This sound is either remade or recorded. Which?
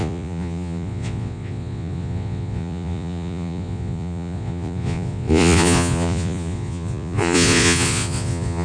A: remade